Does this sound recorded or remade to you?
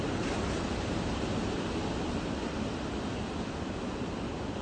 recorded